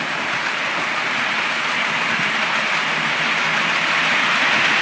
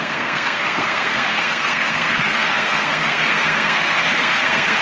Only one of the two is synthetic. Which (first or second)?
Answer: second